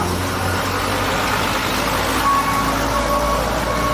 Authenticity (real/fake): real